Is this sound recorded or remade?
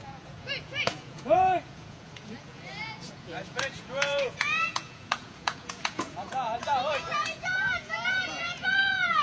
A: remade